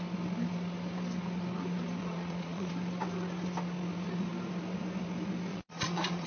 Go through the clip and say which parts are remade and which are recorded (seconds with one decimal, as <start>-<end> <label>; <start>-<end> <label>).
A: 0.0-2.0 recorded; 2.0-2.7 remade; 2.7-5.5 recorded; 5.5-6.3 remade